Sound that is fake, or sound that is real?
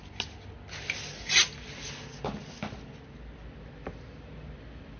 real